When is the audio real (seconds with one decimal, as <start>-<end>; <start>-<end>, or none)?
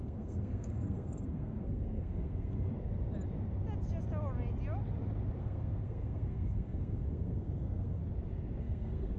2.7-5.4; 8.0-8.6